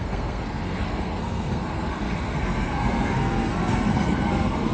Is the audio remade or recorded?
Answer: remade